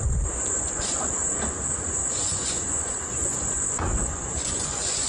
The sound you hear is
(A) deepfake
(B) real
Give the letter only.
A